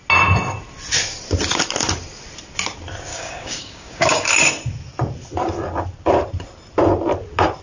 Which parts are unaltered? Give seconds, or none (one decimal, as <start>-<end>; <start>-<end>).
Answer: 0.0-3.1; 4.3-7.6